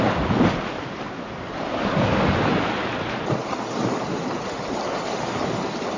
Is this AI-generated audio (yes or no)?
no